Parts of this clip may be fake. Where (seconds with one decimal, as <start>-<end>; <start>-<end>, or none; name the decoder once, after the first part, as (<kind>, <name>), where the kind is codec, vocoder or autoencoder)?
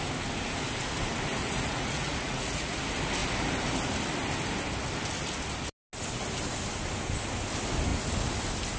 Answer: 1.3-2.8 (vocoder, Vocos)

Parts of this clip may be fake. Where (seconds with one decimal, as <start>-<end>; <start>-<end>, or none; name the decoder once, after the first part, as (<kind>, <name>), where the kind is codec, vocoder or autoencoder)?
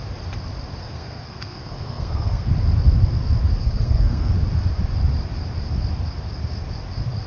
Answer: 0.8-2.5 (codec, SNAC); 3.6-4.3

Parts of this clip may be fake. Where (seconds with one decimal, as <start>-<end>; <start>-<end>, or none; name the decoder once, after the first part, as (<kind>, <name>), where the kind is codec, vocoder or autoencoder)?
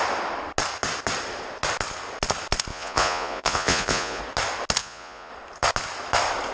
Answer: 2.7-4.2 (vocoder, Vocos); 4.8-5.3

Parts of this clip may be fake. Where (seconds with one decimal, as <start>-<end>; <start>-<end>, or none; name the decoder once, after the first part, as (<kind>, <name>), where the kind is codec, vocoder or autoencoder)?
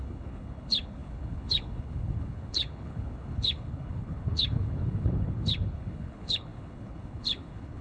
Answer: 0.0-7.8 (codec, HILCodec)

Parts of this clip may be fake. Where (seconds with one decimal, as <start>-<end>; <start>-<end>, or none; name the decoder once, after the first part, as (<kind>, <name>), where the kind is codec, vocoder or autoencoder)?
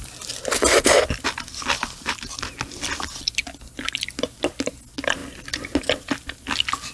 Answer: none